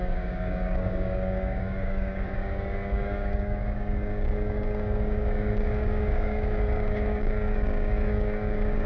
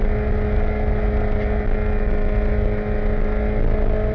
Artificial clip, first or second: first